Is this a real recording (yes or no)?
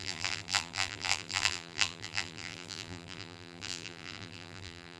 no